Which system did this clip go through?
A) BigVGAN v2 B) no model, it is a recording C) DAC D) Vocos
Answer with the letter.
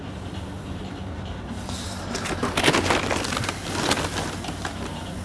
B